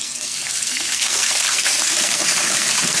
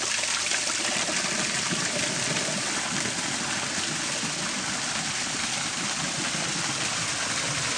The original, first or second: second